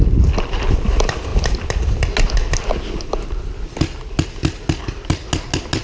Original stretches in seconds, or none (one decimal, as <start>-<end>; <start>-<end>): 0.0-5.8